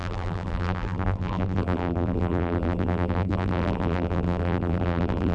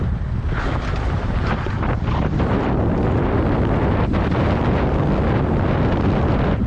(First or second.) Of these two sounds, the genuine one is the second